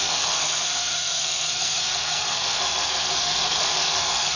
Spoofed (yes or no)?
yes